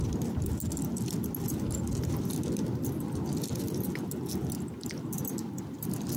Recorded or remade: recorded